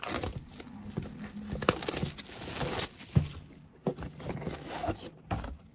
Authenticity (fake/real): real